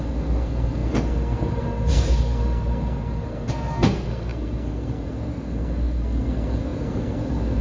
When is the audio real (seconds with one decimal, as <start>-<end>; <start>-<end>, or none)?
none

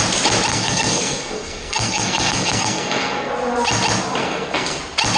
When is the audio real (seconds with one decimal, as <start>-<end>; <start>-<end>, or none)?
0.0-0.5; 3.3-4.2; 4.8-5.2

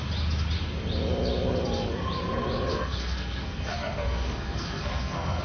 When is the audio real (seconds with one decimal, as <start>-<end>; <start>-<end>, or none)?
0.0-2.7

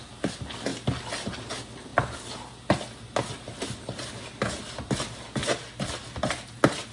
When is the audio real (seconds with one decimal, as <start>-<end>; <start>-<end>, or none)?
0.0-6.9

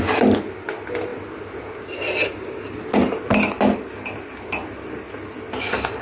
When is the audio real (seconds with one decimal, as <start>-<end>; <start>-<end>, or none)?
0.0-6.0

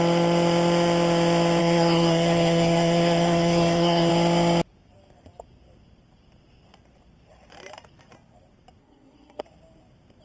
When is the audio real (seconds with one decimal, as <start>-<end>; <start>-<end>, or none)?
0.0-1.6; 4.1-8.8; 9.4-10.2

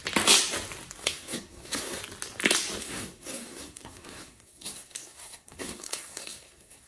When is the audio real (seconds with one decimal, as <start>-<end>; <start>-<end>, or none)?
0.0-1.0; 2.0-2.8

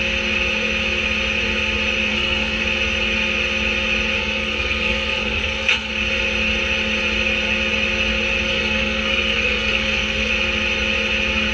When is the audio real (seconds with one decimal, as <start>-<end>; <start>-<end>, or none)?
0.0-2.1; 2.6-4.2; 5.9-8.5; 10.3-11.5